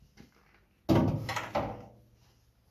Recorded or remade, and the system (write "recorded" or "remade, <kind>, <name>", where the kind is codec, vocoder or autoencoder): recorded